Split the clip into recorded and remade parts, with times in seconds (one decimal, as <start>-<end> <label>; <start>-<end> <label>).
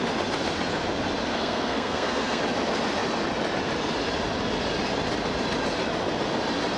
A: 0.0-1.3 recorded; 1.3-2.4 remade; 2.4-6.8 recorded